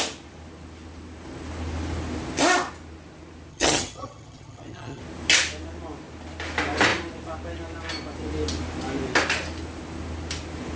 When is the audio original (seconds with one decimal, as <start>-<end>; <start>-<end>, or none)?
0.0-3.5; 5.0-10.8